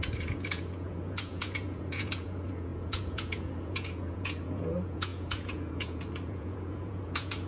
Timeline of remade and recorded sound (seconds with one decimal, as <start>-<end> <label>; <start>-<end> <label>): 0.0-7.5 remade